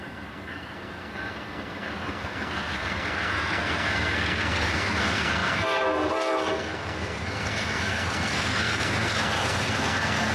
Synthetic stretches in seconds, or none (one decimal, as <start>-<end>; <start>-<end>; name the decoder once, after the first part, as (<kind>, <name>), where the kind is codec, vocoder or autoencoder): 0.0-10.3 (codec, SNAC)